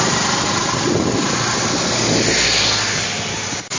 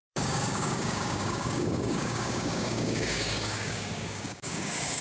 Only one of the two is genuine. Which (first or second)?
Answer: first